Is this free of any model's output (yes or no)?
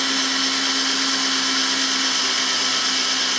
yes